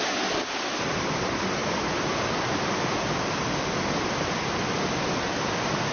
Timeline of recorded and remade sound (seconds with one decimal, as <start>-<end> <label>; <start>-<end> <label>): 0.0-5.9 recorded